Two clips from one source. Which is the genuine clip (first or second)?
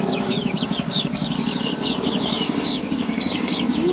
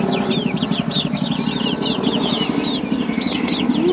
second